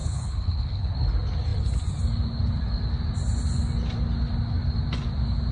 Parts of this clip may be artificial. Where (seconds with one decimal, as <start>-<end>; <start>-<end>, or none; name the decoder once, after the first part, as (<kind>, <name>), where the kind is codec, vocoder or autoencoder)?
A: 0.0-0.9 (codec, HILCodec)